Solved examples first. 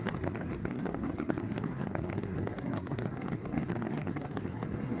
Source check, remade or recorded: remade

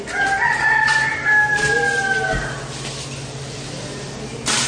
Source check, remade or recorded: recorded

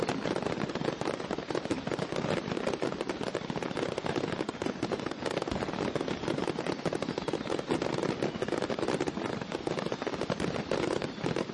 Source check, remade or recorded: recorded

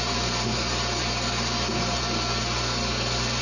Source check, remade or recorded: recorded